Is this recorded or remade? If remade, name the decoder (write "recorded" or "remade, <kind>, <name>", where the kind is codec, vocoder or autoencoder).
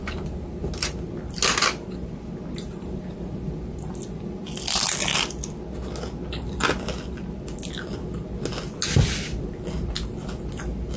recorded